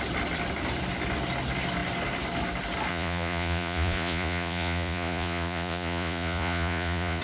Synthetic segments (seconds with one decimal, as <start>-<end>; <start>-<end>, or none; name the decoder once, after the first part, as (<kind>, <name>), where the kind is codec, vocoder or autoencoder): 2.9-7.2 (vocoder, Vocos)